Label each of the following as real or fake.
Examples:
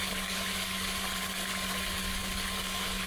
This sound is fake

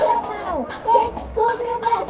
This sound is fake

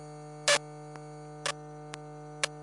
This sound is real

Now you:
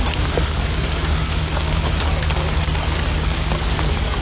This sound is fake